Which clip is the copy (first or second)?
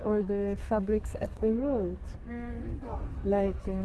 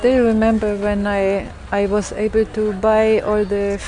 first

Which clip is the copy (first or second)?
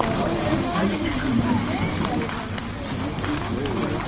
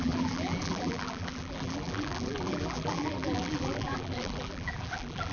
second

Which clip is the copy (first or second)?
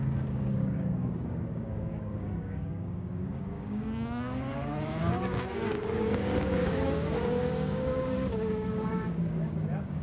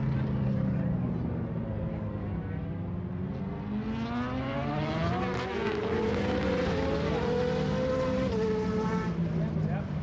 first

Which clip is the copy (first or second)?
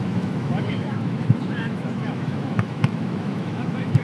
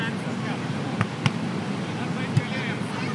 first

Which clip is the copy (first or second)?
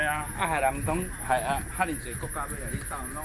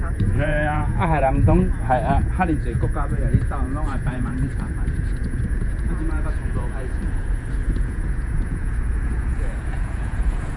second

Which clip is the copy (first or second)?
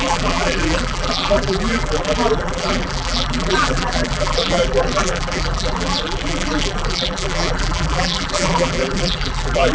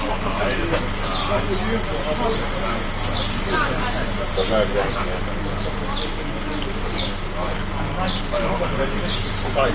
first